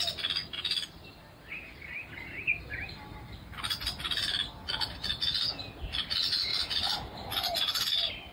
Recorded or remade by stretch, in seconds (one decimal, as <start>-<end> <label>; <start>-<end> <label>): 0.0-8.3 recorded